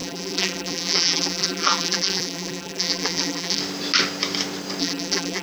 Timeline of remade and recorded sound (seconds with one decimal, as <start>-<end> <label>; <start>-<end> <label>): 0.0-3.6 remade; 3.6-4.8 recorded; 4.8-5.4 remade